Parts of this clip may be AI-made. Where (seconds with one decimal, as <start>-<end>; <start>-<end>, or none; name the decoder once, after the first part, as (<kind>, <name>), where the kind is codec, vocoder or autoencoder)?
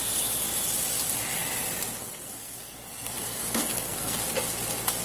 2.0-4.2 (codec, SNAC)